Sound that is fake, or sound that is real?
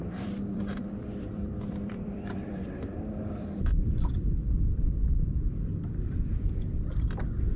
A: fake